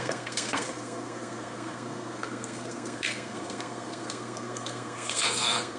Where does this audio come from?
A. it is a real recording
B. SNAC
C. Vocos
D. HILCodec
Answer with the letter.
B